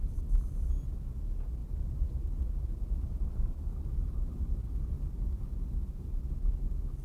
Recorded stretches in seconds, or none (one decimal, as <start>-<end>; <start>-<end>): 0.0-1.6; 5.8-7.0